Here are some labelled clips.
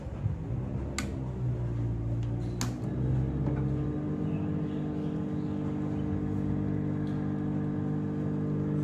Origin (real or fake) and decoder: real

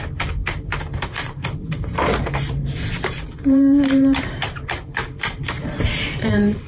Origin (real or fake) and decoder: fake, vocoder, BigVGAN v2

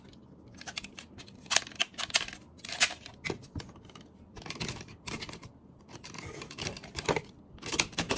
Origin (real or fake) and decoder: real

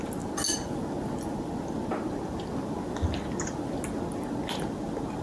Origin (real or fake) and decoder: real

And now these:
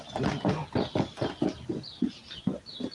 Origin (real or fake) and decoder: real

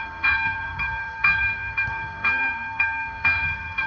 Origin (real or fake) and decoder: fake, codec, SNAC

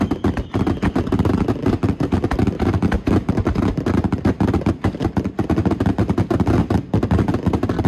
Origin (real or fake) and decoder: real